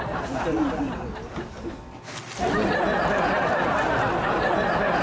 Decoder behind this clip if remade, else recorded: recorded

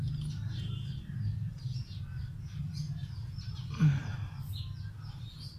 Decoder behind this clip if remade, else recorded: recorded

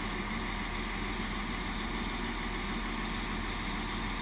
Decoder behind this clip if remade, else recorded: recorded